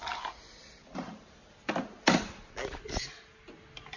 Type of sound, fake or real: real